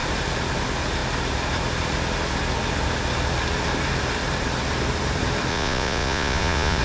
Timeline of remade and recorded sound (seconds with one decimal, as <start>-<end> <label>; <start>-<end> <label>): 0.0-5.5 recorded; 5.5-6.8 remade